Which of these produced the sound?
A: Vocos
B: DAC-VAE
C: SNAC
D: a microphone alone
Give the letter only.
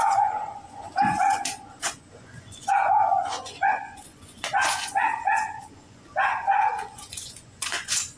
A